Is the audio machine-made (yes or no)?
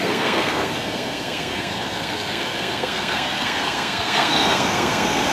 yes